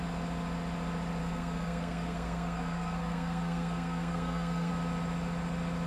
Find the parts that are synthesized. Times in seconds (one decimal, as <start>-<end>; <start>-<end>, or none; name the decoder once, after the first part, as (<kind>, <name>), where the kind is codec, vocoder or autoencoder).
1.2-4.7 (codec, SNAC)